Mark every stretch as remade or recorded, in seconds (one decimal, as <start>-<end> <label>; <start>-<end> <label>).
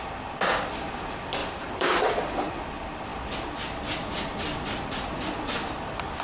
0.0-1.4 recorded; 1.4-2.6 remade; 2.6-6.2 recorded